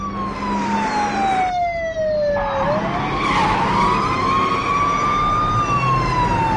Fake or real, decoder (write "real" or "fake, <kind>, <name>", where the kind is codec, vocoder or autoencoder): real